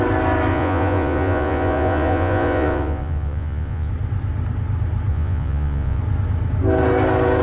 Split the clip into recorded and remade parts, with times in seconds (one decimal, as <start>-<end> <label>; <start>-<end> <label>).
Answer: 0.0-0.5 recorded; 0.5-3.9 remade; 3.9-5.1 recorded; 5.1-6.0 remade; 6.0-7.4 recorded